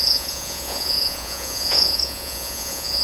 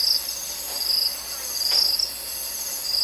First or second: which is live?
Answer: second